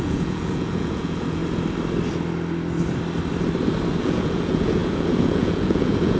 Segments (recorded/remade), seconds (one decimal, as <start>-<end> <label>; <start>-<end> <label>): 0.0-1.4 remade; 1.4-4.0 recorded; 4.0-6.2 remade